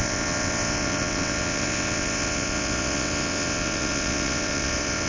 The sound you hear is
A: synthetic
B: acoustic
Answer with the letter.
A